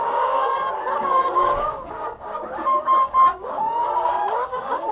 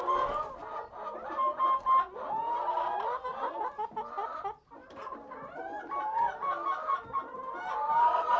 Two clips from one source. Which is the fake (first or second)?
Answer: first